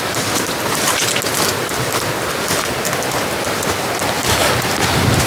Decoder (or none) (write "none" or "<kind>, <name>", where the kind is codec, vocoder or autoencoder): vocoder, BigVGAN v2